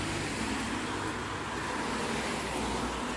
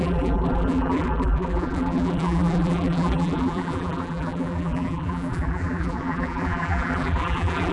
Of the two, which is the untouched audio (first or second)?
first